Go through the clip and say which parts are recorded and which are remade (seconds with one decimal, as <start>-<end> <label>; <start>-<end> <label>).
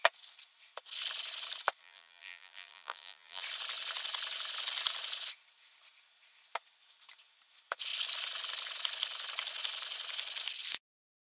0.0-1.8 recorded; 1.8-3.4 remade; 3.4-11.3 recorded